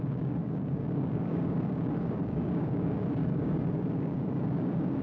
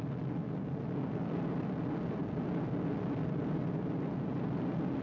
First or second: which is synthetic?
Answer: first